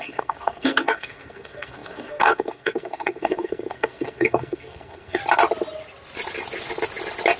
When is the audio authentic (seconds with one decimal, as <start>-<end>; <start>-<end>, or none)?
5.2-7.4